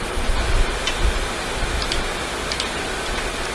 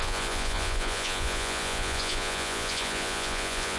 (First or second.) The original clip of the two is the first